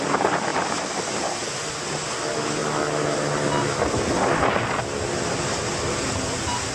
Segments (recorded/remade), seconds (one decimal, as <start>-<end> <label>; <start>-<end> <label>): 0.0-6.7 recorded